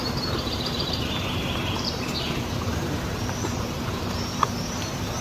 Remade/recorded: remade